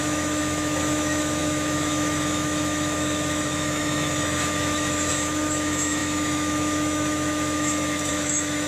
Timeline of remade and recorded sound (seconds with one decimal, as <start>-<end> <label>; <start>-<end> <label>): 0.0-8.7 remade